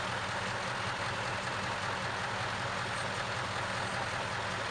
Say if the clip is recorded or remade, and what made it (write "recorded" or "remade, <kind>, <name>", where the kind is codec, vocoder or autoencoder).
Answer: recorded